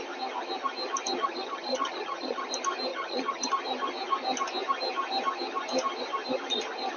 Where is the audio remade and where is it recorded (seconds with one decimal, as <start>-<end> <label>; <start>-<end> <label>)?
0.0-1.2 recorded; 1.2-2.4 remade; 2.4-2.9 recorded; 2.9-3.5 remade; 3.5-7.0 recorded